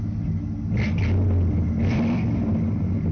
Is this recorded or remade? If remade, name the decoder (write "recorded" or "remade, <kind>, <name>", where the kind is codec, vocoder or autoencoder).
recorded